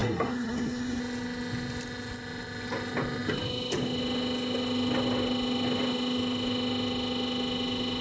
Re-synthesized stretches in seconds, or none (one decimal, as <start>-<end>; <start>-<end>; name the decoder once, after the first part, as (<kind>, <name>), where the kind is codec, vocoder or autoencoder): 0.0-1.0 (codec, SNAC)